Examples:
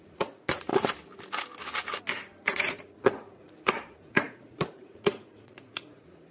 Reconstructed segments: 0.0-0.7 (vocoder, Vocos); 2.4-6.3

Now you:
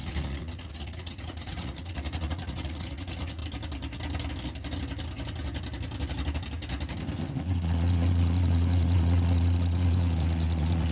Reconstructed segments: 0.0-3.4 (vocoder, Vocos); 7.4-10.9

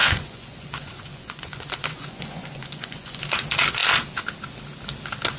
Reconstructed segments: 0.0-3.2 (vocoder, Vocos)